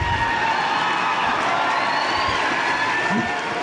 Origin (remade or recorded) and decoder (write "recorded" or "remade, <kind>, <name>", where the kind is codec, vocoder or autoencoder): recorded